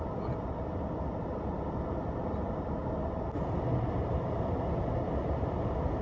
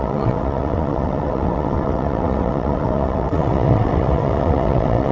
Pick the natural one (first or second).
first